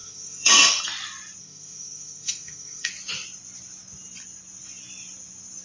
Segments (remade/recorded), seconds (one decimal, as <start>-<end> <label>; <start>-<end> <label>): 0.0-0.8 remade; 0.8-1.4 recorded; 1.4-2.9 remade; 2.9-5.6 recorded